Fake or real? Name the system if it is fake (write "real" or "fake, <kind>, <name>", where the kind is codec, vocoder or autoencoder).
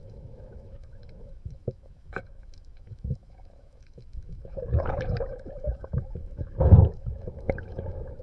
fake, autoencoder, DAC-VAE